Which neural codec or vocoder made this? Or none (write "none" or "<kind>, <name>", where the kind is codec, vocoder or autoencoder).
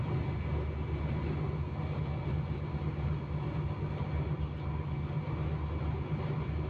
none